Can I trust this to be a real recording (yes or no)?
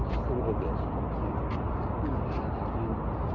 yes